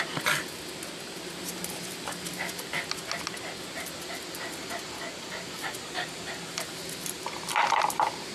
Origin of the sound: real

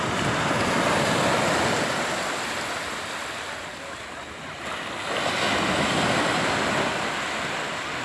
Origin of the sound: real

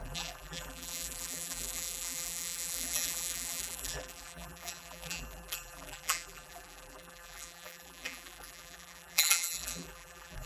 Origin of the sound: fake